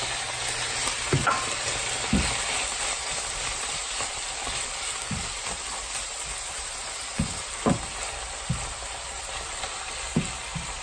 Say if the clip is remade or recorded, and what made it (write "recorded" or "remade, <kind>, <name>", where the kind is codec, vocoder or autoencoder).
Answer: recorded